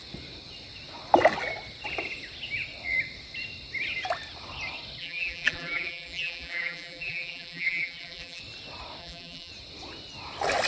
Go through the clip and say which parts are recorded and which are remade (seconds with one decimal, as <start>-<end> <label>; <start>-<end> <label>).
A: 0.0-5.0 recorded; 5.0-8.4 remade; 8.4-9.0 recorded; 9.0-9.5 remade; 9.5-10.7 recorded